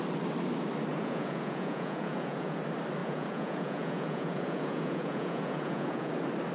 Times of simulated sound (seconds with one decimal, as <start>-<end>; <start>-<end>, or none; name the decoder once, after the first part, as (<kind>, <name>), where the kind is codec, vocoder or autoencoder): 0.9-2.6 (vocoder, Vocos); 3.0-6.1